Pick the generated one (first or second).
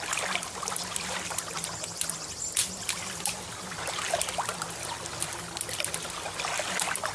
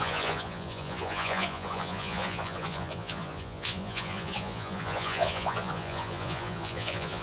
second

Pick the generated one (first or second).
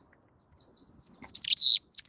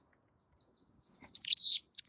second